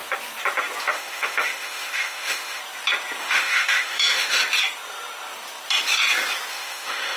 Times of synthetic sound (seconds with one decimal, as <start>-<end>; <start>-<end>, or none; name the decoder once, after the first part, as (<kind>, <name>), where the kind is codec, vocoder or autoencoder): 0.8-2.6 (autoencoder, DAC-VAE); 3.2-4.4; 6.5-7.2